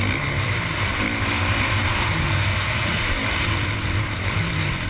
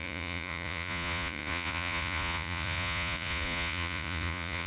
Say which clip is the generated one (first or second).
second